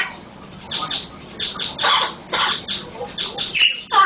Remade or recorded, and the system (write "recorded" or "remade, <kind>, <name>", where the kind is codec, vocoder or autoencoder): recorded